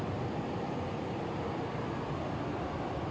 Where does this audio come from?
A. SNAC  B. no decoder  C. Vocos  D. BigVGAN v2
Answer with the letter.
B